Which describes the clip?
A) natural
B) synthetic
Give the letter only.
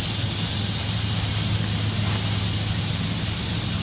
A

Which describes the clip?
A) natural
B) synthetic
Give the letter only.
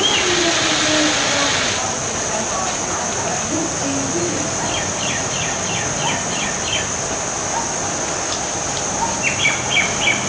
A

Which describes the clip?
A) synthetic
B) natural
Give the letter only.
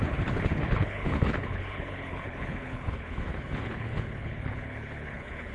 A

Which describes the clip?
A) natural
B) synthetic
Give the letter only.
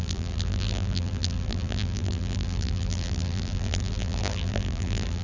B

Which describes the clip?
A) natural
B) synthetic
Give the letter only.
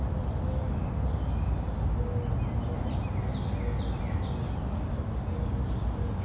A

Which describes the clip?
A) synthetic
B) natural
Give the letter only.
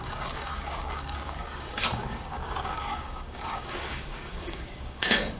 A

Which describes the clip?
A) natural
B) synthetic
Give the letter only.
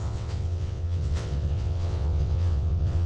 B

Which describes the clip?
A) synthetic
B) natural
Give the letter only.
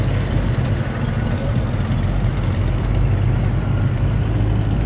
B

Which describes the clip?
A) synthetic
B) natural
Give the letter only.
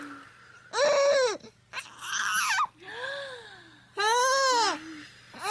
B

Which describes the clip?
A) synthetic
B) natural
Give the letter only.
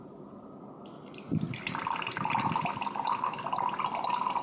B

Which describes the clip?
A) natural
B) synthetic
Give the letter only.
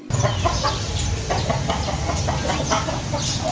A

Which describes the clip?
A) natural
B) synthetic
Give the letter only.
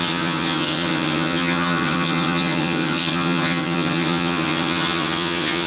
B